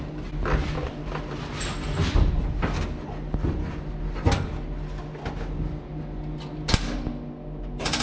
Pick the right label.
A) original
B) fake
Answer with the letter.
A